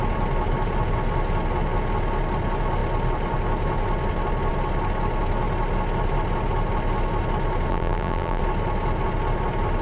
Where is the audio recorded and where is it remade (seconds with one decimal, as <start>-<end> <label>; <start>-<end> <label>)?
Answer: 0.0-7.7 recorded; 7.7-8.4 remade; 8.4-9.8 recorded